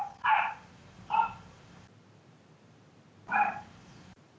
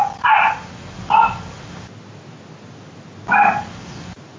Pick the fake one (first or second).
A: first